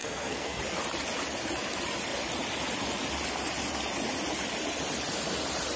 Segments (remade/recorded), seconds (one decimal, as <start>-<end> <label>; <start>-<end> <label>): 0.0-0.6 remade; 0.6-5.8 recorded